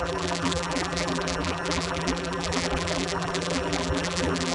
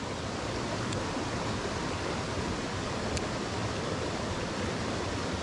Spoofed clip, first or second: first